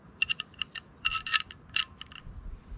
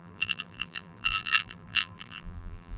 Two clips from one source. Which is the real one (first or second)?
first